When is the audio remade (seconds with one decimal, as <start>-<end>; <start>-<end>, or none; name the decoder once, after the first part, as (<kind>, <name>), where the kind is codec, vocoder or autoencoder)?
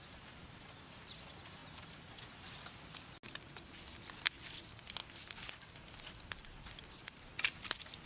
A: none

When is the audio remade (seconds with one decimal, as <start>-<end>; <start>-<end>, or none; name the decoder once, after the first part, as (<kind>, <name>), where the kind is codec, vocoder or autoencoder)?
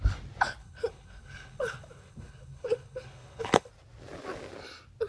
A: 0.6-3.7 (codec, HILCodec)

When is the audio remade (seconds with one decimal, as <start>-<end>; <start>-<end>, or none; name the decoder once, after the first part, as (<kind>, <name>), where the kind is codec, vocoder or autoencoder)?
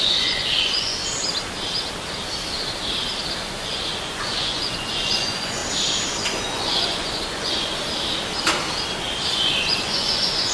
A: 0.0-1.0 (vocoder, Vocos); 3.4-5.6; 6.2-7.7; 9.3-10.5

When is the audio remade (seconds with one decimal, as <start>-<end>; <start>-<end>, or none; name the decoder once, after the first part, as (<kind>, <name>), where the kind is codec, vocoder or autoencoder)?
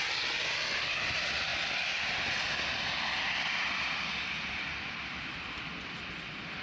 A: none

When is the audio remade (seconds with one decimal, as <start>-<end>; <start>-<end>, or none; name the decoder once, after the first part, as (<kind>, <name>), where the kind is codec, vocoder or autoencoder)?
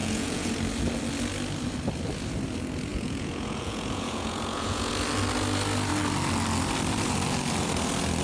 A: 0.0-0.5 (vocoder, Vocos); 2.9-4.9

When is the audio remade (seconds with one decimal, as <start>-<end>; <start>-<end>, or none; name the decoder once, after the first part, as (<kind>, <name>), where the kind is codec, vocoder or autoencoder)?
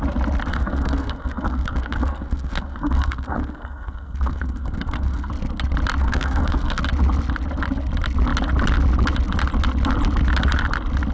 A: 0.5-5.3 (codec, SNAC); 6.0-6.8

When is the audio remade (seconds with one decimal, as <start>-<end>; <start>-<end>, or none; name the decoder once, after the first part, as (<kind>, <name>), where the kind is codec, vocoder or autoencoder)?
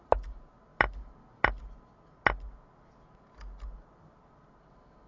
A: none